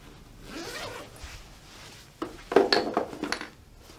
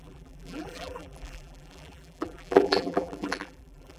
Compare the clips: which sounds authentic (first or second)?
first